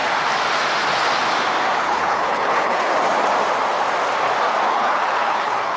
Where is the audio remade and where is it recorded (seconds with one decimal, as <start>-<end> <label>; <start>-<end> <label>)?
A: 0.0-1.8 recorded; 1.8-2.9 remade; 2.9-4.7 recorded; 4.7-5.8 remade